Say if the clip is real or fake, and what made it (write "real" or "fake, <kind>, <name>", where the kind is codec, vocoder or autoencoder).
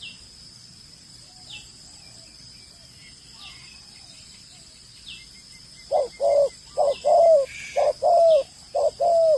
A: real